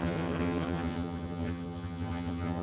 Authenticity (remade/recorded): remade